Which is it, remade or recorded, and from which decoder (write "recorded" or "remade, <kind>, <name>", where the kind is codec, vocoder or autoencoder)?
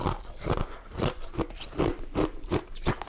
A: remade, vocoder, BigVGAN v2